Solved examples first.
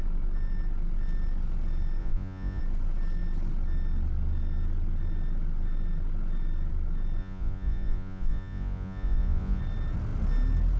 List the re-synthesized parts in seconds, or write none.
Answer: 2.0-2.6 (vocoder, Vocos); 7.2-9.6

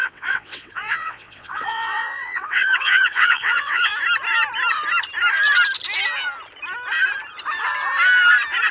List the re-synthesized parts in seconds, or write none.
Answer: 0.0-3.9 (vocoder, WaveNeXt)

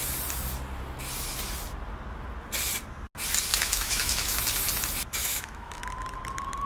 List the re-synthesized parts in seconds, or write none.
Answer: 3.5-4.4 (autoencoder, DAC-VAE); 5.2-5.8

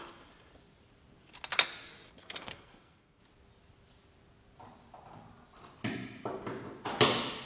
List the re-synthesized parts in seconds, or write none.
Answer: 2.2-3.2 (codec, SNAC)

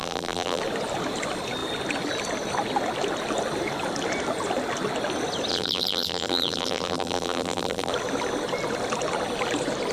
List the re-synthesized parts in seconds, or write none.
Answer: 0.0-0.6 (vocoder, BigVGAN v2); 5.5-7.9

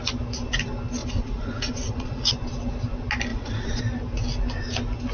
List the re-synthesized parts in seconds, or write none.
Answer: 1.0-2.3 (vocoder, Vocos); 3.3-3.8

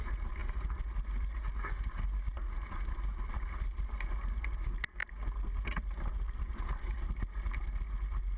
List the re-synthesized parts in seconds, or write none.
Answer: none

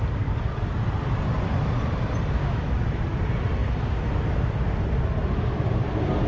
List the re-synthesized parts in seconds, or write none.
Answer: 2.4-3.0 (autoencoder, DAC-VAE)